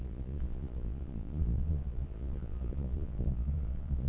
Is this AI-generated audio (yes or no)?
yes